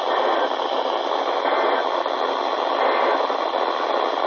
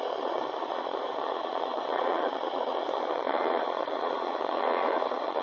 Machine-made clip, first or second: second